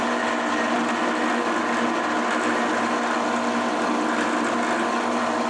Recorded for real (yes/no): yes